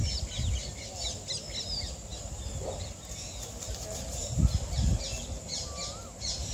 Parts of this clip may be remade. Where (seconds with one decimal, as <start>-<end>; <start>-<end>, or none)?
none